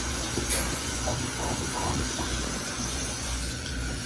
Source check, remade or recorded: remade